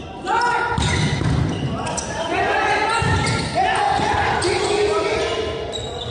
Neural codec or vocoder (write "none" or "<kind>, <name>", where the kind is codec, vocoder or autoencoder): none